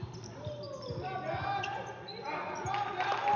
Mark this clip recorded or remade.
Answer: recorded